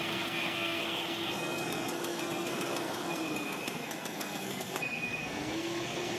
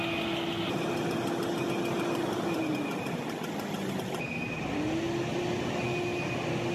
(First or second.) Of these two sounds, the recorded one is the second